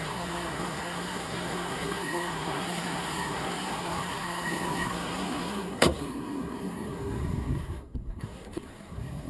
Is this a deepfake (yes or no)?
yes